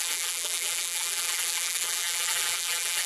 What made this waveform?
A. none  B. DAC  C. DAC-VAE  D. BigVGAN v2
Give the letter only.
D